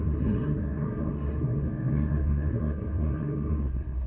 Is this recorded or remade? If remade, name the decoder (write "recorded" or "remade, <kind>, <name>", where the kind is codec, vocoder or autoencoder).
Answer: remade, codec, SNAC